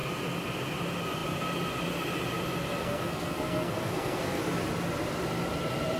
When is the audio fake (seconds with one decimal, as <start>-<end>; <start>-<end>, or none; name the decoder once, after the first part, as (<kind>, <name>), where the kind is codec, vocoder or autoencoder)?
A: 2.8-4.4 (codec, SNAC)